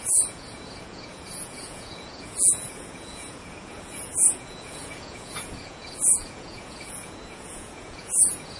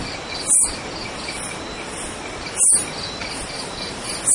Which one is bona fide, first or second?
second